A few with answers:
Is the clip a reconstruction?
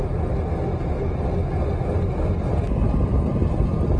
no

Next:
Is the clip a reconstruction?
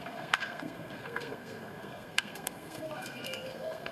yes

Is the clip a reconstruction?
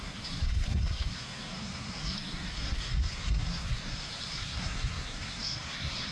yes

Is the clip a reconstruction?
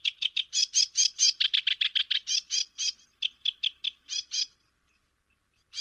no